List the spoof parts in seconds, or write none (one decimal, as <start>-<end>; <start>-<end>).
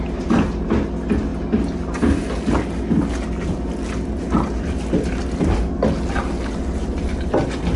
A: none